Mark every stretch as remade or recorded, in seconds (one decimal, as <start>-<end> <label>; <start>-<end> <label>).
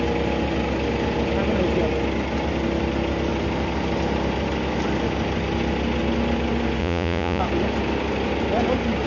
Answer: 0.0-6.8 recorded; 6.8-7.4 remade; 7.4-9.1 recorded